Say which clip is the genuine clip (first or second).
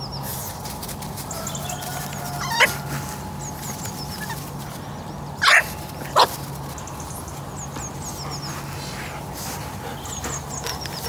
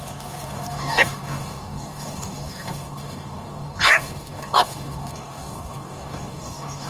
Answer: first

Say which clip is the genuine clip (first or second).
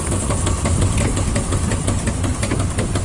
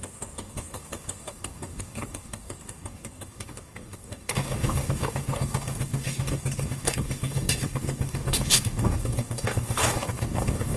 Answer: first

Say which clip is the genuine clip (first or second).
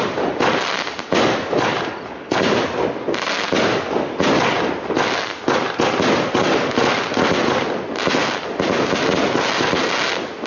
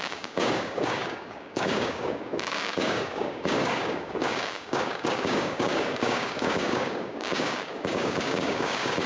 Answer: first